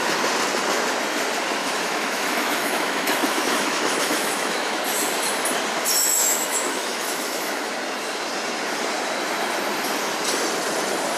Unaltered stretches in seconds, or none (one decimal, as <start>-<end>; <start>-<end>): 0.0-1.6; 4.8-6.2; 7.7-11.2